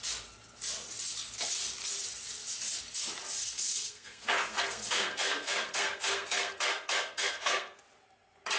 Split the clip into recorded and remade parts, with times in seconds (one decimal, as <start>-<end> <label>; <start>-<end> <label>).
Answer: 0.0-3.4 recorded; 3.4-7.8 remade; 7.8-8.6 recorded